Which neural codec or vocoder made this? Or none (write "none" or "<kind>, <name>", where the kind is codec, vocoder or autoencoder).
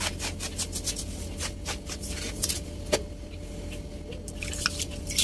none